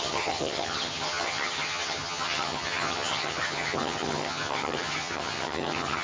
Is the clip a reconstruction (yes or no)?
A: yes